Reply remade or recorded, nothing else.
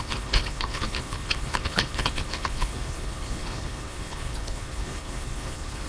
remade